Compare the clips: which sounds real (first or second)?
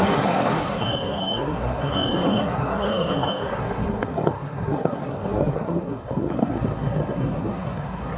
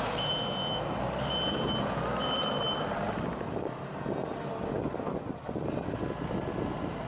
second